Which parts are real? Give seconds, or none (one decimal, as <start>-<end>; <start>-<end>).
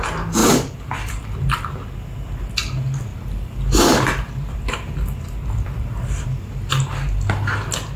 0.0-0.4; 1.1-3.1; 6.9-8.0